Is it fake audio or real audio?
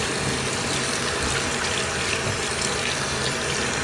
real